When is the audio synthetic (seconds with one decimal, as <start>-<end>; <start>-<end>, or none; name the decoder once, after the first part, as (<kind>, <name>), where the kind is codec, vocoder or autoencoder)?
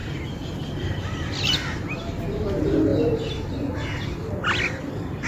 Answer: 0.0-1.0 (vocoder, BigVGAN v2)